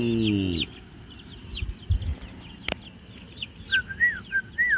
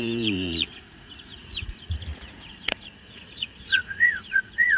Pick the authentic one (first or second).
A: first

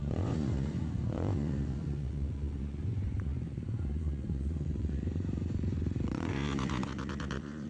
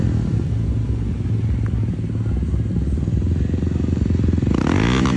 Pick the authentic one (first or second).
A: second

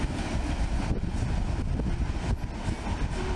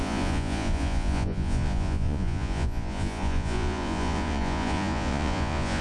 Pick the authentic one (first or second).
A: first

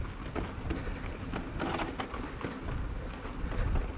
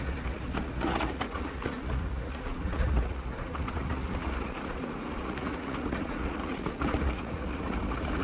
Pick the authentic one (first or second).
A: first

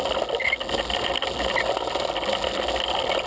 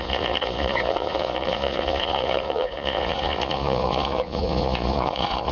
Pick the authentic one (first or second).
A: first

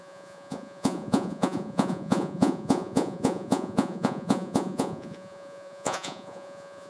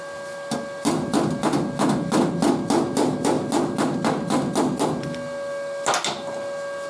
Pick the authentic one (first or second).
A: second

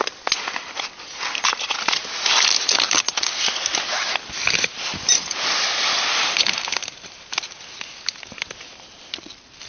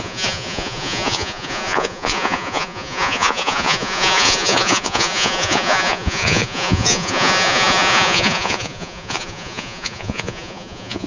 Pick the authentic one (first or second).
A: first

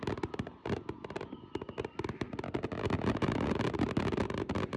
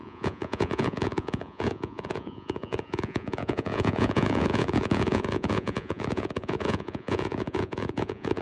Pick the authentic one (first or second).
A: first